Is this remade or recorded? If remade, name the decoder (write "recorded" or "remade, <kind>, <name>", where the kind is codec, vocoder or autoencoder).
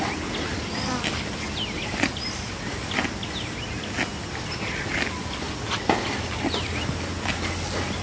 recorded